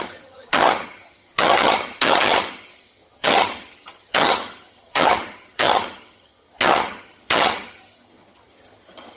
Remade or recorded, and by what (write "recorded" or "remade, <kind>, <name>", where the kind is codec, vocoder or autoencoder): remade, vocoder, HiFi-GAN